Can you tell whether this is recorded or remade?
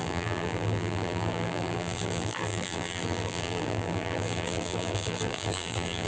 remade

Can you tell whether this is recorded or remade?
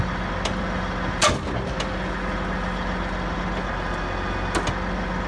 recorded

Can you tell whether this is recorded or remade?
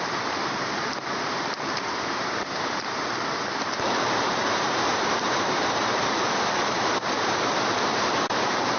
remade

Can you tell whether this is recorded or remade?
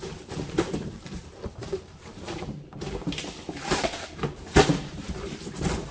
remade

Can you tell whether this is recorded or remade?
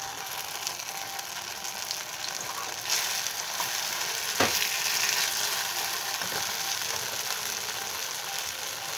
recorded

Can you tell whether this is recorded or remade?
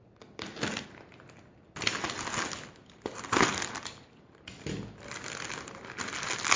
recorded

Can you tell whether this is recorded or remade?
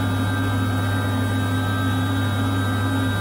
recorded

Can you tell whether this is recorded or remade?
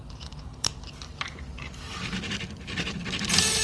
remade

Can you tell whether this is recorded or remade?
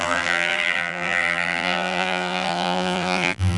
remade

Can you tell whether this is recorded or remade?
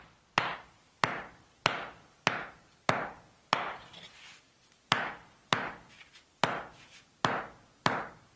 recorded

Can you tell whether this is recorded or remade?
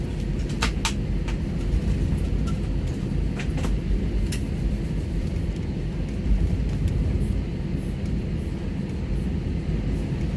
recorded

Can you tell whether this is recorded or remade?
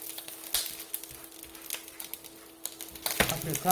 recorded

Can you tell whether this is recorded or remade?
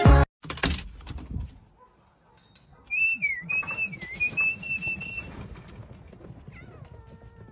recorded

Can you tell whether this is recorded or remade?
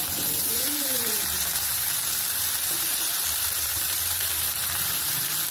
remade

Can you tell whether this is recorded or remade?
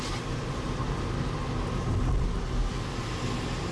recorded